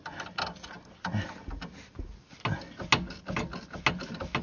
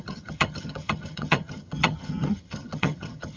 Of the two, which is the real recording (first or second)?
first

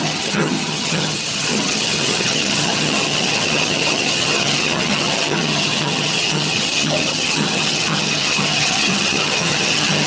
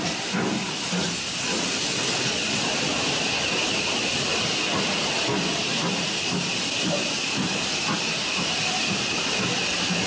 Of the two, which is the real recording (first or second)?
second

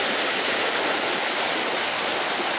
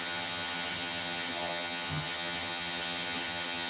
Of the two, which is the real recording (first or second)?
first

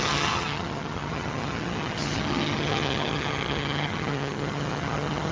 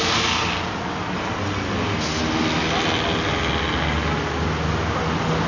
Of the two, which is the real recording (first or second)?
second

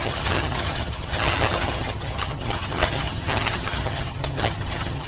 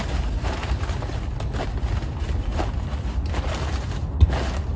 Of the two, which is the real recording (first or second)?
second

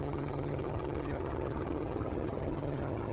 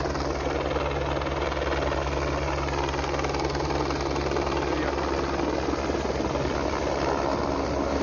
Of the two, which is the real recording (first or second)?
second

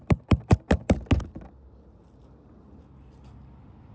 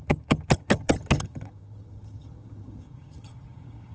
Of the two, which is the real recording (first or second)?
first